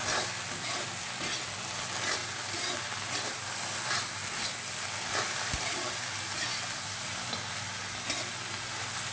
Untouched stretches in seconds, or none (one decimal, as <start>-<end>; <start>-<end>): 0.0-9.1